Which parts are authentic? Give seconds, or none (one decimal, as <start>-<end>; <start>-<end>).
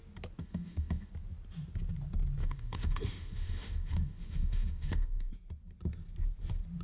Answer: 0.0-0.4; 1.1-2.4; 5.3-6.8